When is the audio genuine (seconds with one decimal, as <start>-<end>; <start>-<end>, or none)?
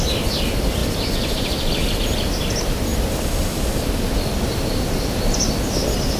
0.0-0.8; 2.0-2.9; 5.2-6.2